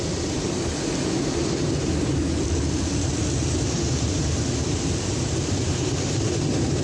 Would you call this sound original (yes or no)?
yes